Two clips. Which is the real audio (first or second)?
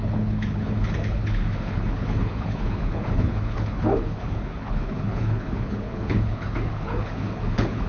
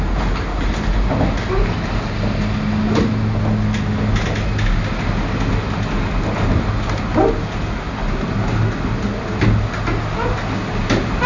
second